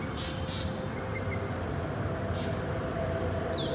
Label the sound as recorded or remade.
recorded